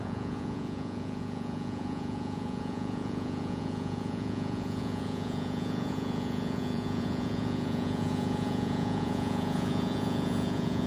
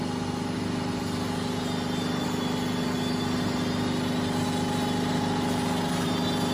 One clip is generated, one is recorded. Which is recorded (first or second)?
second